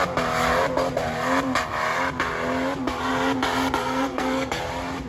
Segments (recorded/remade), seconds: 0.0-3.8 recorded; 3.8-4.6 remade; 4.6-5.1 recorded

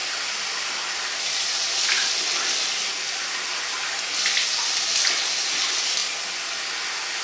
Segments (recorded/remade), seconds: 0.0-7.2 recorded

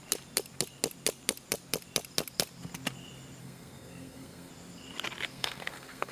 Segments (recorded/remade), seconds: 0.0-3.4 recorded; 3.4-4.5 remade; 4.5-5.3 recorded; 5.3-6.1 remade

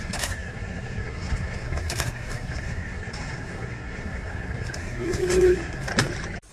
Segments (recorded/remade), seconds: 0.0-5.9 remade; 5.9-6.5 recorded

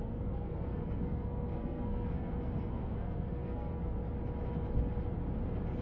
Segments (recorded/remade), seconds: 0.0-4.0 remade; 4.0-5.8 recorded

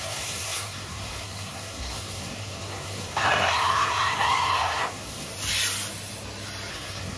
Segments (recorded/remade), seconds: 0.0-5.3 remade; 5.3-6.7 recorded; 6.7-7.2 remade

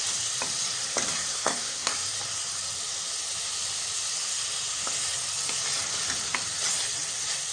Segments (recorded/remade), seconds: 0.0-1.3 recorded; 1.3-1.9 remade; 1.9-7.5 recorded